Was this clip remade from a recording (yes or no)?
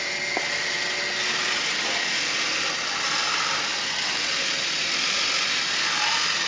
no